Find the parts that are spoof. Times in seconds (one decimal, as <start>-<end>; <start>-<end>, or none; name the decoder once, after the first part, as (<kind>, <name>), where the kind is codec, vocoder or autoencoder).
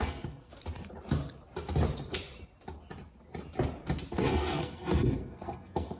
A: 0.0-0.5 (codec, SNAC); 4.1-6.0